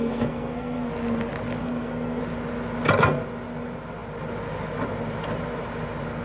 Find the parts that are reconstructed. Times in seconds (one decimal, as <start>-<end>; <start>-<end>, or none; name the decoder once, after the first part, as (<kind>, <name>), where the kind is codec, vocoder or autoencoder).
0.0-0.9 (codec, SNAC); 1.6-2.2